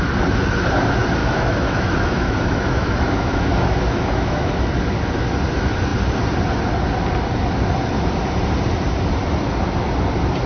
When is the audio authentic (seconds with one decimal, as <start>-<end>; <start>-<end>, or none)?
0.0-1.2; 4.7-10.5